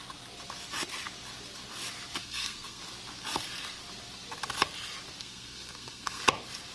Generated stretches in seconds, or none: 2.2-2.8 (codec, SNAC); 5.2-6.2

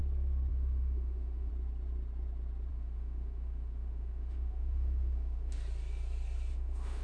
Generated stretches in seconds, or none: 0.5-1.5 (autoencoder, DAC-VAE); 2.7-5.6; 6.5-7.0

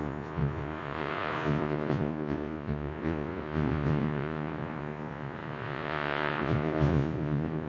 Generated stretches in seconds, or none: 0.0-7.7 (vocoder, Vocos)

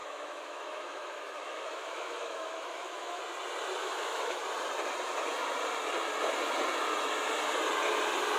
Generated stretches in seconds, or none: 0.0-3.2 (autoencoder, DAC-VAE); 3.8-4.4

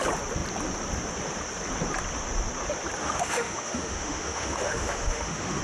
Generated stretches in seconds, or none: 3.0-5.6 (autoencoder, DAC-VAE)

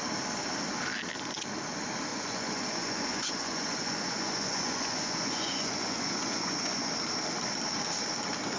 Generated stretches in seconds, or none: 2.1-6.9 (vocoder, Vocos)

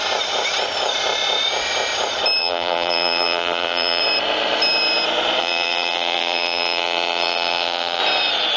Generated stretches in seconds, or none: 2.4-4.0 (vocoder, BigVGAN v2); 5.4-8.0

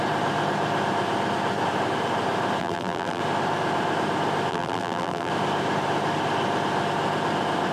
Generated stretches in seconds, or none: 2.6-3.2 (vocoder, BigVGAN v2); 4.5-5.3